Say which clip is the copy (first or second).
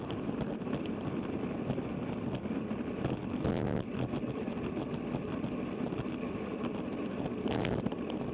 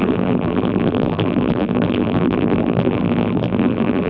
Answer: second